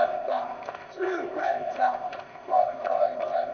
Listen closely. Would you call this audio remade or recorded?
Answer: remade